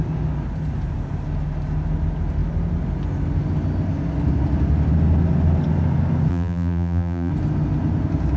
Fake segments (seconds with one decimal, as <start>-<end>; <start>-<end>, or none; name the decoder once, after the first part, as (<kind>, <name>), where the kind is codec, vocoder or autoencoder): 6.3-7.3 (vocoder, BigVGAN v2)